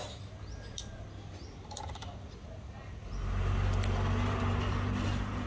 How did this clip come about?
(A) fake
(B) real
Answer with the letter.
B